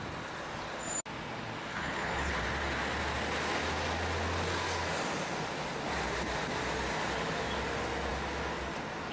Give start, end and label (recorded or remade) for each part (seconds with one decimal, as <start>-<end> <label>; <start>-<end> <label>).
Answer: 0.0-1.7 recorded; 1.7-2.3 remade; 2.3-9.1 recorded